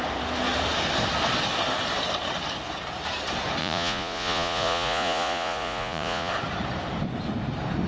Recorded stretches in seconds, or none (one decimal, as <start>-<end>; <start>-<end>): 0.0-3.6; 6.3-7.9